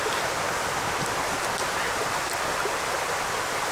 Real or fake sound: real